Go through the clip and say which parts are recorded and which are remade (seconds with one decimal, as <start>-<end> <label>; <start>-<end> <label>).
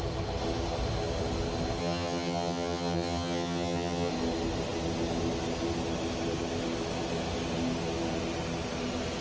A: 0.0-1.8 recorded; 1.8-4.1 remade; 4.1-9.2 recorded